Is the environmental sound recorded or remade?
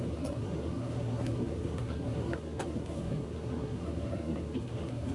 remade